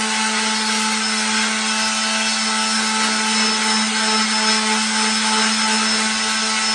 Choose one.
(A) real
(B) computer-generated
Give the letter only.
A